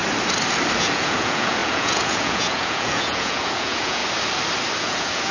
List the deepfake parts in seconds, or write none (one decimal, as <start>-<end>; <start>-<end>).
0.8-4.0; 4.8-5.3